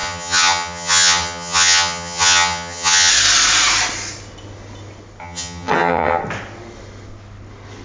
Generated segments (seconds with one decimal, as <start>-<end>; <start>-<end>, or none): 0.0-3.1; 5.2-6.2